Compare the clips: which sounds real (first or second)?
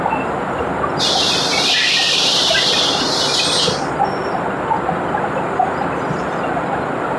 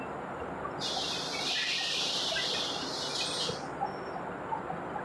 second